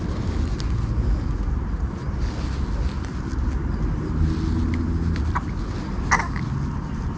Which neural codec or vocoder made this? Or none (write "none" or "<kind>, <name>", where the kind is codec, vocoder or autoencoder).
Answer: none